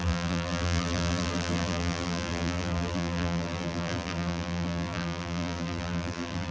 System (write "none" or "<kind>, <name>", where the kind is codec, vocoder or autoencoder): vocoder, BigVGAN v2